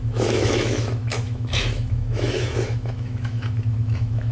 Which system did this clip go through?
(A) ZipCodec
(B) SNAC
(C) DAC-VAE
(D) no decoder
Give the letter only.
C